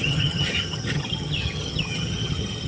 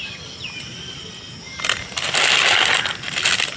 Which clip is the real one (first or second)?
second